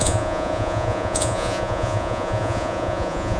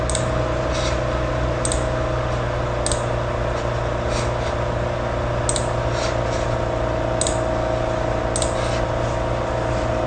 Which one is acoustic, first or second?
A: second